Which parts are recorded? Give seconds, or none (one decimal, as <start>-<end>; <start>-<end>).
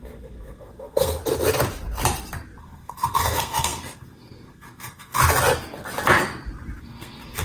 1.2-2.6; 5.2-6.8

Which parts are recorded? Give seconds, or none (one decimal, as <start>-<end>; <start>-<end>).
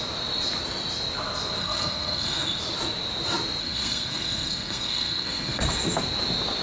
0.0-1.6; 2.6-3.6; 5.6-6.6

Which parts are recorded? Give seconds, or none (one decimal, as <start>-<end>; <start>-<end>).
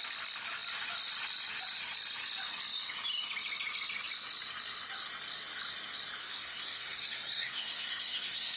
0.0-6.2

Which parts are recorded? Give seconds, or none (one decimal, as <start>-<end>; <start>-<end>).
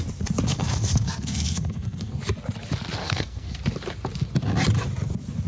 0.0-0.5; 2.2-3.0; 3.6-5.5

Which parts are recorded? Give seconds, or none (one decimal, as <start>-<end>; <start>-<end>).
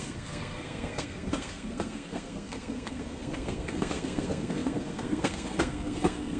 none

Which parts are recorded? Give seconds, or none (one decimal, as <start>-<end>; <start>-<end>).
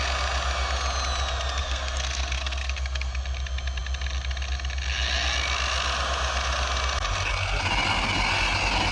0.0-1.6; 3.1-8.9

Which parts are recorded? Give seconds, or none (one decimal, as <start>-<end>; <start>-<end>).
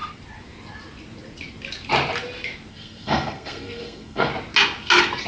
0.0-2.7; 4.3-5.3